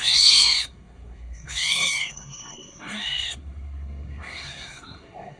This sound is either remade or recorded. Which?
remade